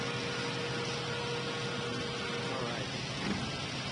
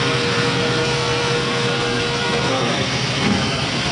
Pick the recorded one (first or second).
first